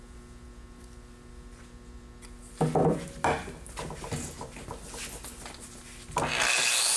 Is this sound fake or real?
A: real